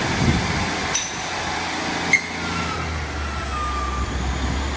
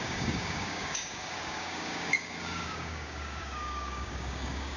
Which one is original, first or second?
first